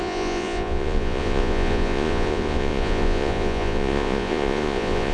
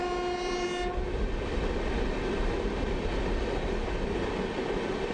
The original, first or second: second